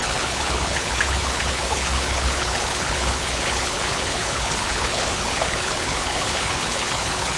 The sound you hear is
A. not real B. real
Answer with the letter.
A